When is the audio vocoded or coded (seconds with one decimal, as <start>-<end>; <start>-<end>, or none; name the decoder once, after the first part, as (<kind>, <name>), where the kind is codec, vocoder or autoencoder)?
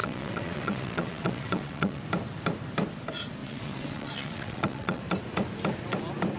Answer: 0.0-2.0 (vocoder, WaveNeXt); 3.4-5.0